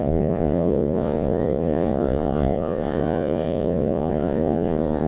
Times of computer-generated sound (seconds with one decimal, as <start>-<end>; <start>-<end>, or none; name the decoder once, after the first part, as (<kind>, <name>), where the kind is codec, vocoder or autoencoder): 0.0-5.1 (vocoder, Vocos)